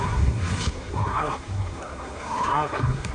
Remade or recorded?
remade